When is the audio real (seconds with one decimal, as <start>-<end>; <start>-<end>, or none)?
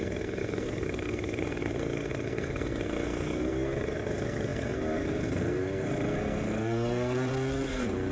none